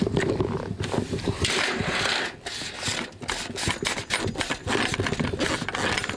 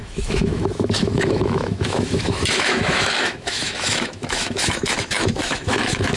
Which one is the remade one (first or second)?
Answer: second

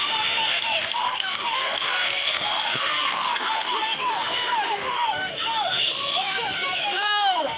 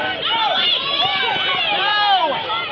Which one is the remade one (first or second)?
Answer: first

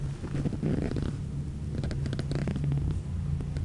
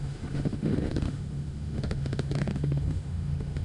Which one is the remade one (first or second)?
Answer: second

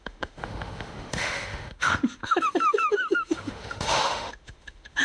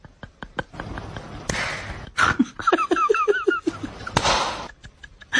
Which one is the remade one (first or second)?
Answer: first